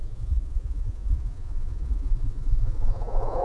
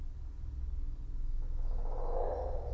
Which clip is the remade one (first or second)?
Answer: first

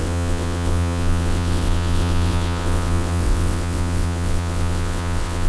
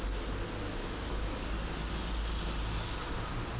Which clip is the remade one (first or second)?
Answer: first